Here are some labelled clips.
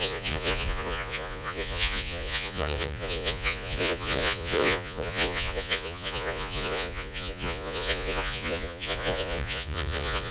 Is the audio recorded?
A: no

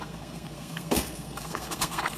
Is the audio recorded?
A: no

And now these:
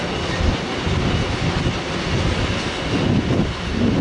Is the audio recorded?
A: yes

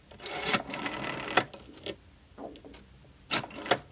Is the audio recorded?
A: yes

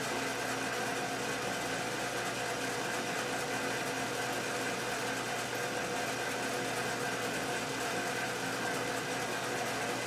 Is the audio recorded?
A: yes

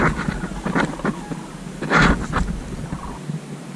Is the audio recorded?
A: yes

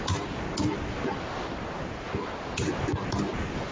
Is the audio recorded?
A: yes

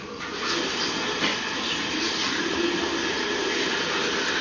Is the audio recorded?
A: yes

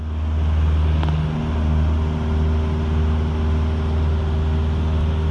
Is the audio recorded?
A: yes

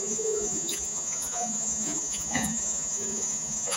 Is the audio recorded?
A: no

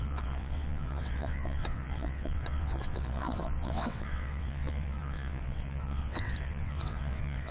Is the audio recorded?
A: no